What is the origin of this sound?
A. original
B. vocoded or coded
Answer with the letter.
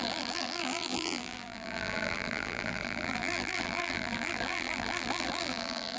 B